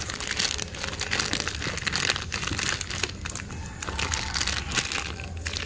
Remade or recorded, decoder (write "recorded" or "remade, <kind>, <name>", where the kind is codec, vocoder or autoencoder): recorded